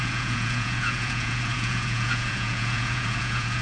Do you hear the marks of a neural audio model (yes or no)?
yes